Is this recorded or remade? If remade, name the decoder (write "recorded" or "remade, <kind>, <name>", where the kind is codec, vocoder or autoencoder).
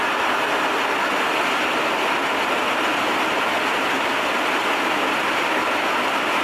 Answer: recorded